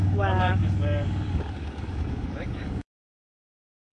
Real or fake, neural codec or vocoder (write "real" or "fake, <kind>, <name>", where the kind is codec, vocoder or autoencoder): fake, codec, DAC